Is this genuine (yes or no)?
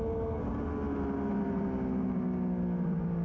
yes